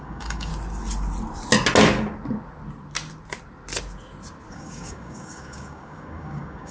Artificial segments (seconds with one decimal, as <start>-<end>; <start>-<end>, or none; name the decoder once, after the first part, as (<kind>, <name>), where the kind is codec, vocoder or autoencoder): 0.0-0.5 (codec, DAC); 4.5-6.7